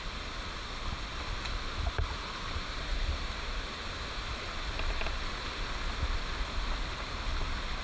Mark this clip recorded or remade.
recorded